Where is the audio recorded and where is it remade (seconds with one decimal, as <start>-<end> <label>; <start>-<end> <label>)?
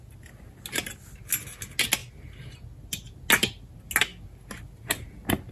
0.0-5.5 recorded